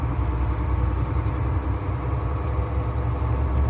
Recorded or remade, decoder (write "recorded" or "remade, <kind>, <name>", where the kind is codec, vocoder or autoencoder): recorded